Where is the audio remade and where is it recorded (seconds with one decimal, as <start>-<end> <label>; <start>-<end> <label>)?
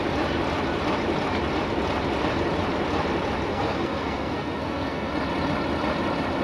0.0-3.5 recorded; 3.5-5.1 remade; 5.1-6.4 recorded